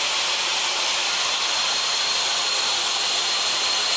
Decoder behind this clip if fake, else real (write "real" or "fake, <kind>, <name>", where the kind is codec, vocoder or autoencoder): fake, vocoder, BigVGAN v2